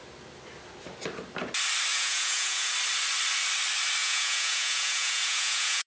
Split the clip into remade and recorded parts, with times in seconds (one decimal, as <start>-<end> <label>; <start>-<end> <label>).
0.0-1.9 recorded; 1.9-2.7 remade; 2.7-4.0 recorded; 4.0-5.9 remade